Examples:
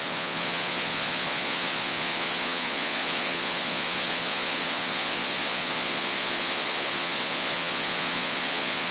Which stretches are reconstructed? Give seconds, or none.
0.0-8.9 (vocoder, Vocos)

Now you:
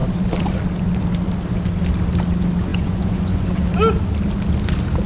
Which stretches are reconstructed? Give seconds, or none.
2.7-3.6 (vocoder, Vocos)

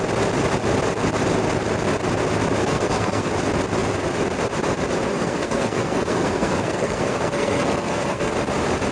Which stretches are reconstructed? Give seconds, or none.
2.6-3.3 (codec, SNAC); 5.1-8.3

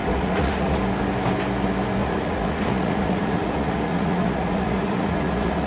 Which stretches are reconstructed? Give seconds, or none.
0.0-0.8 (vocoder, Vocos); 2.0-5.7